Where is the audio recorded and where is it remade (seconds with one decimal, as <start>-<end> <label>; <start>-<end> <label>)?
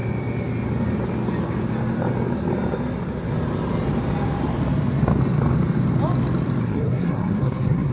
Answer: 0.0-6.6 recorded; 6.6-7.9 remade